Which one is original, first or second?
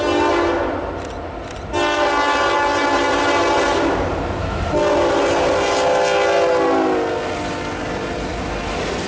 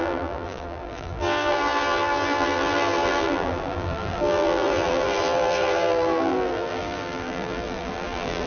first